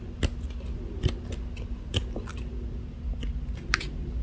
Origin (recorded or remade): recorded